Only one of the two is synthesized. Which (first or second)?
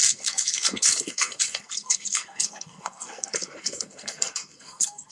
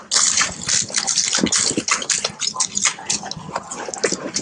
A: first